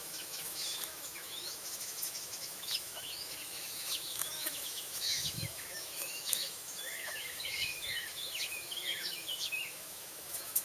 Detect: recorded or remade remade